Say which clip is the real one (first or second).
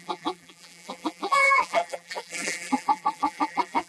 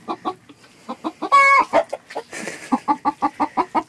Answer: second